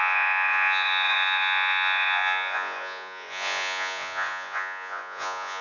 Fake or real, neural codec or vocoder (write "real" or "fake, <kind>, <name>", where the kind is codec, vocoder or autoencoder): fake, vocoder, Vocos